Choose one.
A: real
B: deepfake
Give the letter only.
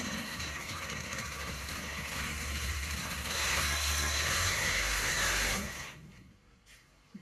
B